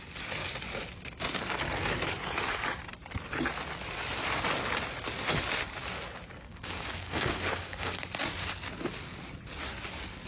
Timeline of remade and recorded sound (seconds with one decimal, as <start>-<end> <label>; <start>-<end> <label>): 0.0-6.5 recorded; 6.5-8.0 remade; 8.0-10.3 recorded